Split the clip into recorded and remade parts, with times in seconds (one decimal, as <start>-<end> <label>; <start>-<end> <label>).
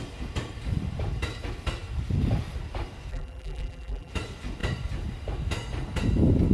0.0-3.1 recorded; 3.1-4.1 remade; 4.1-6.5 recorded